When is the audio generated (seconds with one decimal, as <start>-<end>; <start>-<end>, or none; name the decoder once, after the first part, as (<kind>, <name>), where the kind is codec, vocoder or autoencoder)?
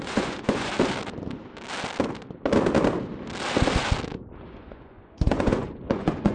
0.0-0.7 (vocoder, Vocos); 4.5-6.3